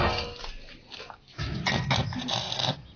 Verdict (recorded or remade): recorded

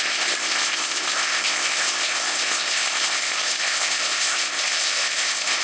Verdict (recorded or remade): remade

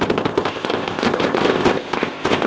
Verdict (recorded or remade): remade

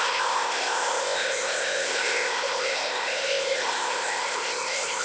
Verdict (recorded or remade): remade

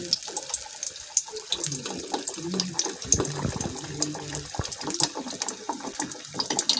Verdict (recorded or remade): recorded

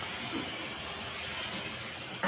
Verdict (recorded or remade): recorded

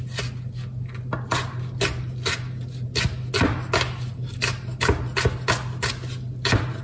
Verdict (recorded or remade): recorded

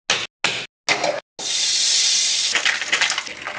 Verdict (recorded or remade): recorded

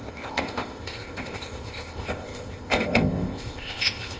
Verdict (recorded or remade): remade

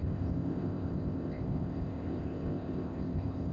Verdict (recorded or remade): remade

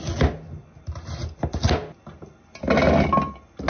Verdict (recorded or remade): recorded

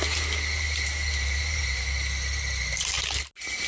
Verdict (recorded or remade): recorded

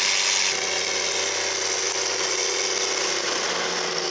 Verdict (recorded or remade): recorded